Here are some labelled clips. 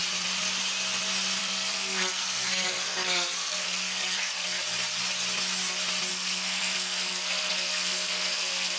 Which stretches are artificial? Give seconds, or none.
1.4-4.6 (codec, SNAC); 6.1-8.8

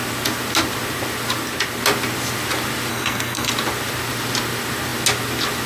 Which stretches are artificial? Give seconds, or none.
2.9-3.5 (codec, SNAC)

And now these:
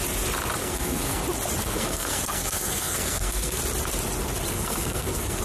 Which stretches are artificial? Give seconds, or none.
0.6-1.2 (codec, SNAC); 1.6-3.6; 4.5-5.4

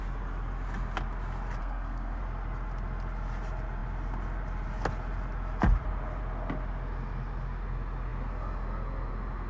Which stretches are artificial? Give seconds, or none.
1.6-2.2 (codec, SNAC)